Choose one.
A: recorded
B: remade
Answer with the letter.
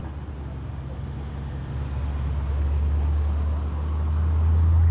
A